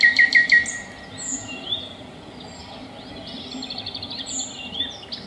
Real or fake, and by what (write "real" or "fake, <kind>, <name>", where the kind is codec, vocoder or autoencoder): real